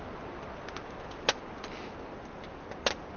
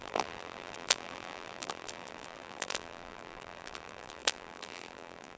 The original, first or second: first